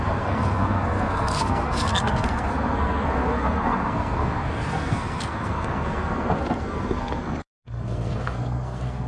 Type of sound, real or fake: fake